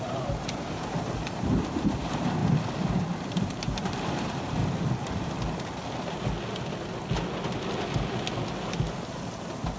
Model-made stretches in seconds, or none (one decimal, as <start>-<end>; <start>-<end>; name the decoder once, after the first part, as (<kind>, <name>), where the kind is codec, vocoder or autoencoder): 0.0-2.4 (vocoder, BigVGAN v2); 3.3-4.6